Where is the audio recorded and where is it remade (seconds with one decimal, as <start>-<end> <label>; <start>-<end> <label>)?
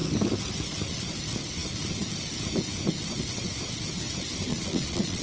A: 0.0-4.5 recorded; 4.5-5.2 remade